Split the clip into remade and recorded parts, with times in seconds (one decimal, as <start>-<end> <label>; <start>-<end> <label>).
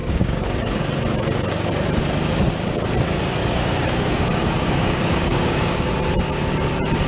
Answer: 0.0-0.7 remade; 0.7-3.4 recorded; 3.4-5.9 remade; 5.9-7.1 recorded